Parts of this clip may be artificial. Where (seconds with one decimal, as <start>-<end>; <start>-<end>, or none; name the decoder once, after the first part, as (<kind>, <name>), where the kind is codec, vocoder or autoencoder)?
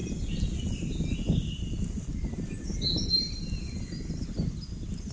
none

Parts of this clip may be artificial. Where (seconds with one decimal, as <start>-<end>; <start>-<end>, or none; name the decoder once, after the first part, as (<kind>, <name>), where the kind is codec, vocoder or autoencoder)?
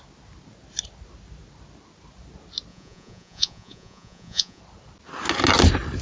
2.7-4.6 (vocoder, Vocos)